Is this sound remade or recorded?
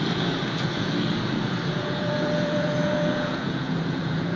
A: remade